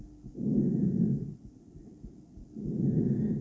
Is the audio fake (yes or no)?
no